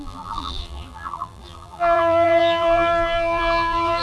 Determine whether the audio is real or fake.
fake